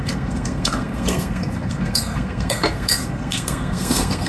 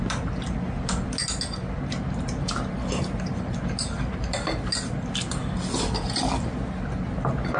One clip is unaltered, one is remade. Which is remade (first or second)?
first